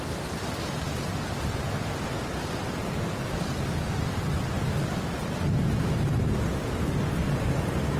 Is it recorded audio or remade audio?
recorded